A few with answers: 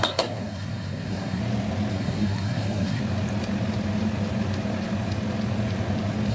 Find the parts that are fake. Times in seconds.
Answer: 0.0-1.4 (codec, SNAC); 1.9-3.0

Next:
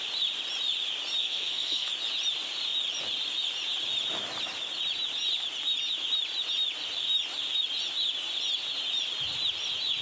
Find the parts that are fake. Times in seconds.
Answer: 1.2-1.9 (codec, SNAC)

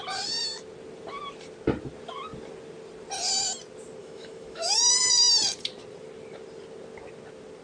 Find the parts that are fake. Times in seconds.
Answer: 4.0-4.9 (autoencoder, DAC-VAE)

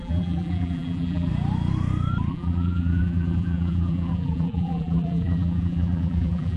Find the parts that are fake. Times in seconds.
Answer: 0.0-1.3 (vocoder, BigVGAN v2); 2.3-6.6

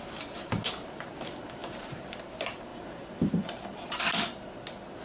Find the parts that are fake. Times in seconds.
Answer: 2.7-4.0 (vocoder, BigVGAN v2)

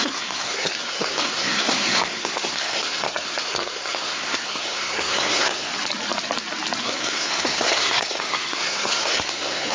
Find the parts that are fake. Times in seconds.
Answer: 0.0-5.7 (codec, SNAC); 6.8-9.7

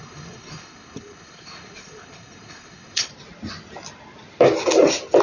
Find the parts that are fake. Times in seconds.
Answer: 0.0-3.1 (codec, HILCodec)

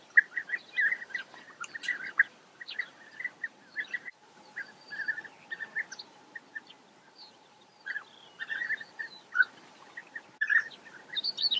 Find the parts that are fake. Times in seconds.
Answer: 0.0-4.1 (vocoder, BigVGAN v2); 7.1-7.7; 8.2-10.0